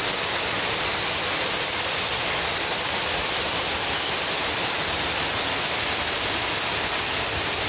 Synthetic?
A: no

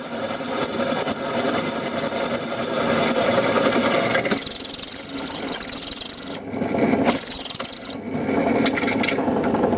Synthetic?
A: no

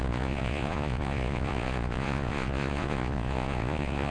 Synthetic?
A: yes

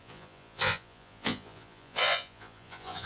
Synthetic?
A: yes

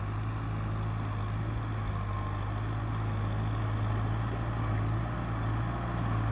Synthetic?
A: no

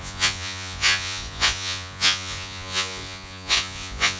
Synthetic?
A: yes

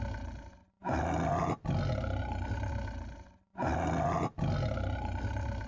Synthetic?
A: no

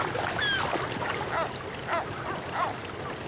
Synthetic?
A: no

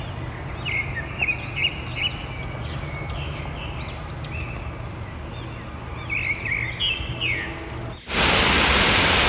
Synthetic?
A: no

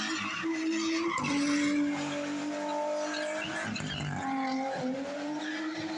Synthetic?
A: no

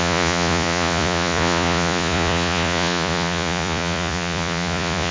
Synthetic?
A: yes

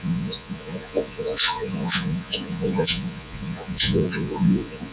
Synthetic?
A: yes